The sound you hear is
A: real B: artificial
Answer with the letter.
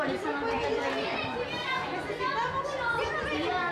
A